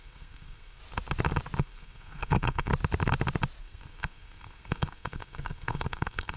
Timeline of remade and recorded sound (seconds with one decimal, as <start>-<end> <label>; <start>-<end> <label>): 0.0-0.8 remade; 0.8-1.6 recorded; 1.6-2.7 remade; 2.7-3.6 recorded; 3.6-6.4 remade